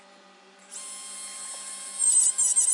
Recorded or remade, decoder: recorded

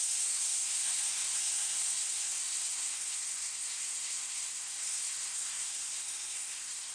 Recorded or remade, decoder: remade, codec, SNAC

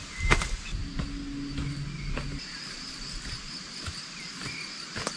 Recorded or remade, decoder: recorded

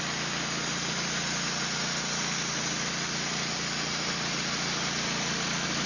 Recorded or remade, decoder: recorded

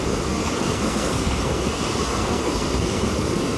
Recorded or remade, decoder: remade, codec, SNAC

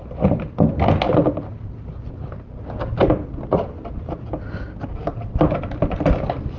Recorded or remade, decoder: recorded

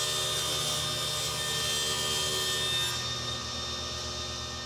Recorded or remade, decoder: recorded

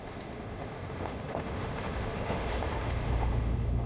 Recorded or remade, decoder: remade, autoencoder, DAC-VAE